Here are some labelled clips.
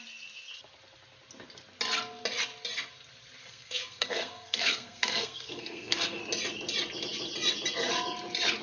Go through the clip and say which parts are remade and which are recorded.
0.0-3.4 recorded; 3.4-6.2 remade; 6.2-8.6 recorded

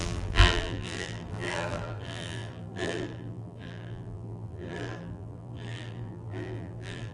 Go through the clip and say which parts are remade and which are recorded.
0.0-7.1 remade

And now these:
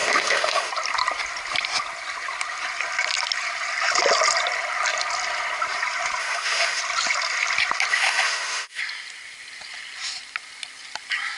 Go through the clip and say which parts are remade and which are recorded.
0.0-0.7 remade; 0.7-6.2 recorded; 6.2-6.8 remade; 6.8-7.9 recorded; 7.9-8.8 remade; 8.8-11.4 recorded

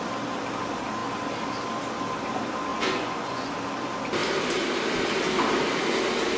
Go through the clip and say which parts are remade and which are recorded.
0.0-2.7 recorded; 2.7-3.5 remade; 3.5-6.4 recorded